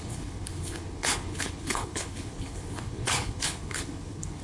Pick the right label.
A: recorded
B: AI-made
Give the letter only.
B